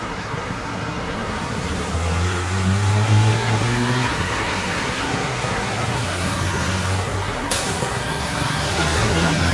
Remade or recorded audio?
remade